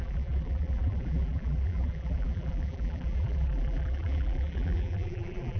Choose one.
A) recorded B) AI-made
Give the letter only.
B